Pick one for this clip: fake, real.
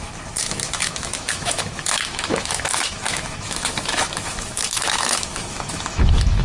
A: fake